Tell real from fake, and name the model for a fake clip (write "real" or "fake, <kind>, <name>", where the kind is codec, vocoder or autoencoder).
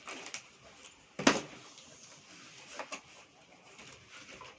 real